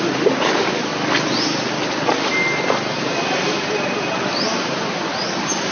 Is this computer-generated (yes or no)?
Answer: no